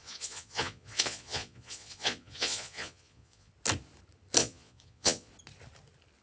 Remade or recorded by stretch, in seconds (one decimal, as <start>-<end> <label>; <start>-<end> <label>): 0.0-3.5 remade; 3.5-4.4 recorded; 4.4-5.3 remade; 5.3-6.2 recorded